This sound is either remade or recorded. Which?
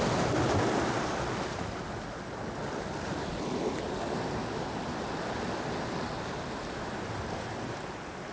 recorded